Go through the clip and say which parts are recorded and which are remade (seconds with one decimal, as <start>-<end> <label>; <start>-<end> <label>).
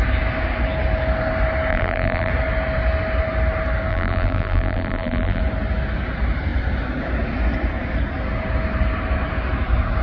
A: 0.0-1.7 recorded; 1.7-2.3 remade; 2.3-3.9 recorded; 3.9-5.4 remade; 5.4-10.0 recorded